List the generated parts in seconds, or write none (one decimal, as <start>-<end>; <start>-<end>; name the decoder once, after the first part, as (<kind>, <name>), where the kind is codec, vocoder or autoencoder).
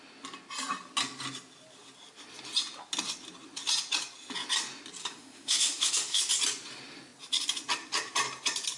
5.0-6.2 (autoencoder, DAC-VAE)